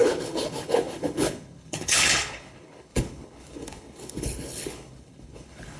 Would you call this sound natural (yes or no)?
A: no